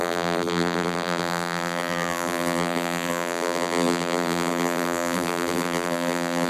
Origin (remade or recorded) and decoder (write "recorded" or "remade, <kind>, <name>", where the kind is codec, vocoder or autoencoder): remade, vocoder, BigVGAN v2